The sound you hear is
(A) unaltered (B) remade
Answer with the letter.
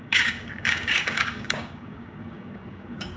B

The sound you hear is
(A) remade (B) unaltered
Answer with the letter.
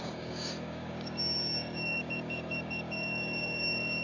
A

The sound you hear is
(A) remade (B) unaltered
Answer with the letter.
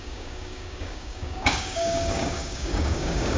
A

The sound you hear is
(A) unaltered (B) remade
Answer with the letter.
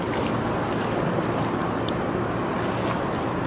A